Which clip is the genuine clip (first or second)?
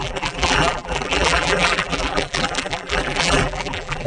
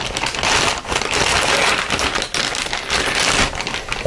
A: second